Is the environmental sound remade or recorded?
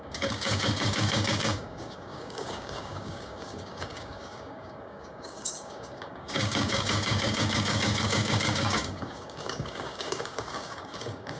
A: remade